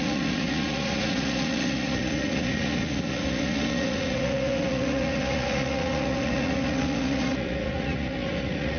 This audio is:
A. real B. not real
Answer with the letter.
B